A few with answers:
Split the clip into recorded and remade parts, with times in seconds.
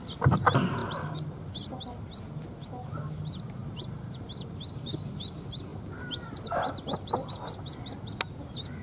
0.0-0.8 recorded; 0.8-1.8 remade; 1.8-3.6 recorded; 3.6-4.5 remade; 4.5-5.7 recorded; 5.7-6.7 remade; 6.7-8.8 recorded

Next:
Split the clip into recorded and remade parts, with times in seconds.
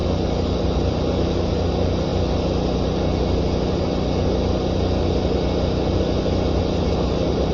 0.0-2.1 remade; 2.1-6.6 recorded; 6.6-7.5 remade